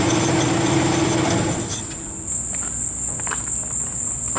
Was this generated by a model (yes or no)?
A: no